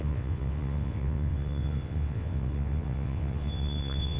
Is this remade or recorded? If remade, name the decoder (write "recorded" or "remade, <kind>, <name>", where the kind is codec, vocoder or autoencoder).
remade, vocoder, WaveNeXt